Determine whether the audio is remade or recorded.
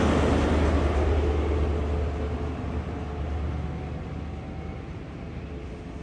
recorded